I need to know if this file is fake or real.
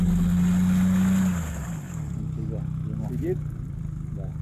real